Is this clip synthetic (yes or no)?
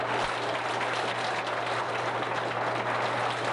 yes